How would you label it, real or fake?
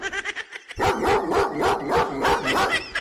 real